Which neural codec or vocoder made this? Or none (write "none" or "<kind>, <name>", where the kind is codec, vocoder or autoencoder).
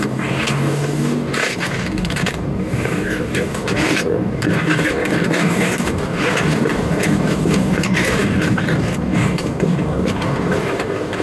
codec, DAC